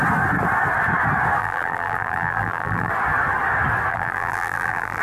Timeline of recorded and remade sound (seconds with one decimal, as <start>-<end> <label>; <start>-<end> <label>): 0.0-1.4 recorded; 1.4-2.9 remade; 2.9-3.9 recorded; 3.9-5.0 remade